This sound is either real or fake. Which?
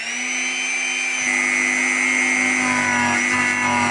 real